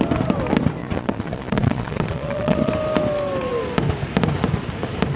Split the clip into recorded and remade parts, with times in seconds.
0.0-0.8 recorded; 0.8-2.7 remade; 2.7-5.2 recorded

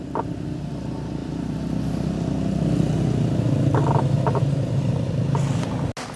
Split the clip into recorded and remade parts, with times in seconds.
0.0-6.2 recorded

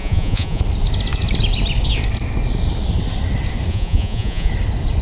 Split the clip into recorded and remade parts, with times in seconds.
0.0-0.6 remade; 0.6-3.7 recorded; 3.7-4.5 remade; 4.5-5.0 recorded

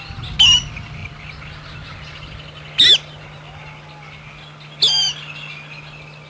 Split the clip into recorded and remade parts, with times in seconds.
0.0-6.3 recorded

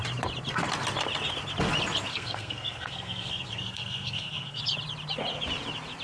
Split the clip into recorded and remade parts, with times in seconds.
0.0-2.1 recorded; 2.1-4.6 remade; 4.6-6.0 recorded

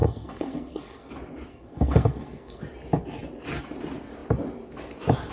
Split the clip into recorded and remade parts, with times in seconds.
0.0-1.1 remade; 1.1-1.5 recorded; 1.5-2.6 remade; 2.6-5.3 recorded

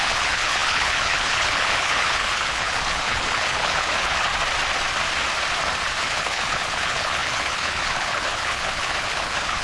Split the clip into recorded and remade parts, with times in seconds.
0.0-4.3 remade; 4.3-6.0 recorded; 6.0-9.6 remade